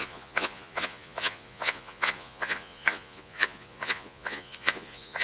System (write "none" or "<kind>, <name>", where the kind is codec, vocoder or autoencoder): vocoder, Vocos